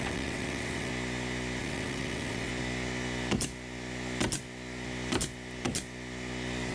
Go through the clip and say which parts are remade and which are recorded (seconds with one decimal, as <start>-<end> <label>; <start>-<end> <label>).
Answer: 0.0-0.9 remade; 0.9-1.6 recorded; 1.6-2.5 remade; 2.5-6.7 recorded